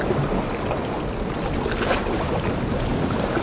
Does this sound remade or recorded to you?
recorded